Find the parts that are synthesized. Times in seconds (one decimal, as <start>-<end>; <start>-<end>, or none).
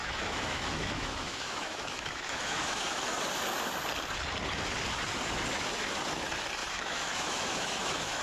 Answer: 0.0-3.2; 6.6-8.2